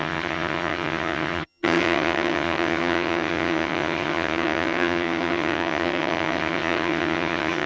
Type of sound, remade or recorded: remade